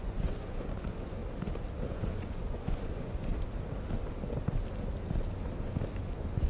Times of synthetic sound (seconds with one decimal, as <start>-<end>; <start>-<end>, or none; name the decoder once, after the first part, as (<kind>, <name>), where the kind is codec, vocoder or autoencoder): 0.0-1.2 (vocoder, Vocos); 1.9-3.3; 6.0-6.5